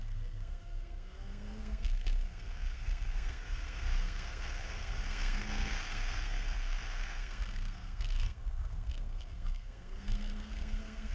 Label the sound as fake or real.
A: fake